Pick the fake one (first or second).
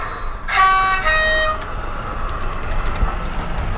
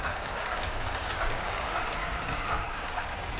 second